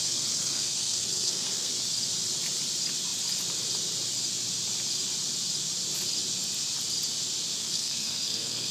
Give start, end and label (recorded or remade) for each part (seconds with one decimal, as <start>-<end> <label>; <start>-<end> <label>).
0.0-1.7 remade; 1.7-7.6 recorded; 7.6-8.7 remade